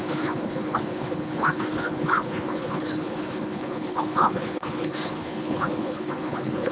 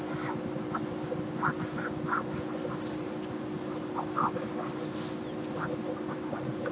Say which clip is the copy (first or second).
first